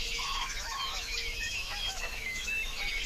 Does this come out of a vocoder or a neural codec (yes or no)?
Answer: yes